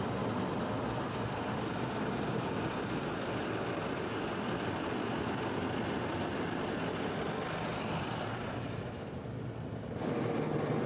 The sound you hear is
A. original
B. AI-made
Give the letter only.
A